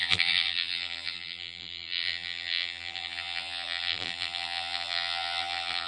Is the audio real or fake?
fake